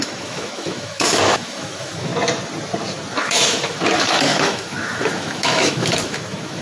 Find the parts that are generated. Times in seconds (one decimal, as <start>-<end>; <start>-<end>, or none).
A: 0.0-2.1; 3.2-6.6